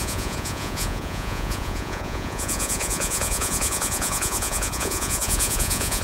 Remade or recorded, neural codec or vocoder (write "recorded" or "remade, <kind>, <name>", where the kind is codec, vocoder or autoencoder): remade, vocoder, Vocos